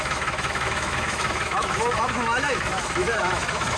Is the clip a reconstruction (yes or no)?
yes